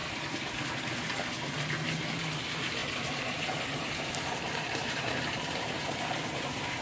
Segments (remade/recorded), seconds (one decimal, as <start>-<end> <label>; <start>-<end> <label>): 0.0-2.4 recorded; 2.4-6.8 remade